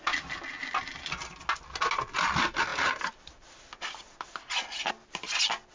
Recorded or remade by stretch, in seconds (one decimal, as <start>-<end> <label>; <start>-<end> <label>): 0.0-5.7 recorded